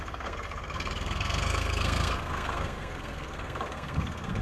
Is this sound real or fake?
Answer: fake